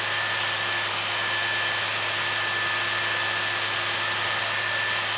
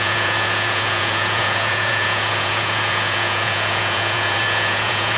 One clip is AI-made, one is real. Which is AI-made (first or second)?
second